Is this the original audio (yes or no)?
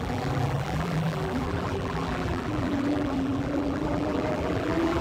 no